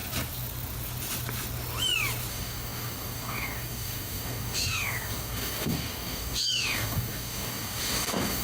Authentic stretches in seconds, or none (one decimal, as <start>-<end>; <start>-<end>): 0.0-2.3